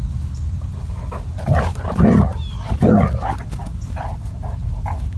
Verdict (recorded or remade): recorded